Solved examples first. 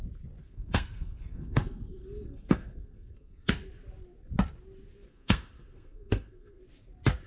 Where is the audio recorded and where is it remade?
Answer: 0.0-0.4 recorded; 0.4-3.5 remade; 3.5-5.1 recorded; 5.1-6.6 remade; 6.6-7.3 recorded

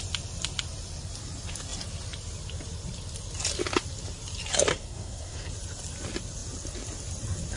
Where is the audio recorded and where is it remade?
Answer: 0.0-4.7 recorded; 4.7-5.5 remade; 5.5-7.6 recorded

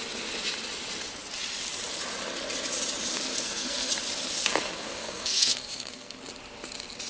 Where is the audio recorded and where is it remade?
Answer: 0.0-3.1 recorded; 3.1-3.9 remade; 3.9-4.4 recorded; 4.4-6.2 remade; 6.2-7.1 recorded

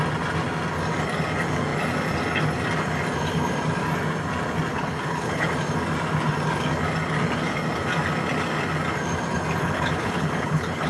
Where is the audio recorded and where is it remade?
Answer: 0.0-4.7 recorded; 4.7-5.5 remade; 5.5-9.6 recorded; 9.6-10.9 remade

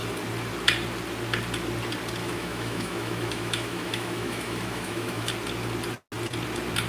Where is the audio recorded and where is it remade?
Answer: 0.0-2.2 recorded; 2.2-5.3 remade; 5.3-6.9 recorded

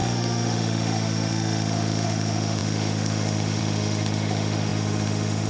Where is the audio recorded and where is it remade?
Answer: 0.0-5.5 remade

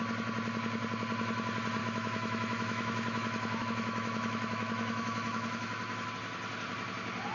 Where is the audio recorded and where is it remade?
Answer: 0.0-1.8 recorded; 1.8-6.1 remade; 6.1-7.3 recorded